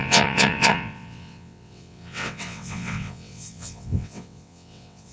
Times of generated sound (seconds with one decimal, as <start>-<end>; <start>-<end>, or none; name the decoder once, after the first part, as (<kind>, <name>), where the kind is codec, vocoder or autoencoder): 0.0-5.1 (vocoder, WaveNeXt)